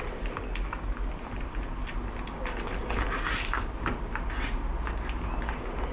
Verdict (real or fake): real